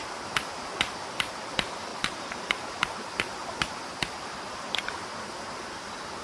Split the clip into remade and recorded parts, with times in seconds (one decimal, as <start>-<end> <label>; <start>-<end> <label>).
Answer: 0.0-1.9 recorded; 1.9-4.5 remade; 4.5-6.2 recorded